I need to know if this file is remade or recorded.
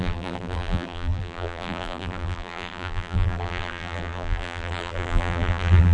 remade